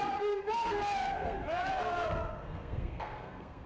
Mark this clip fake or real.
fake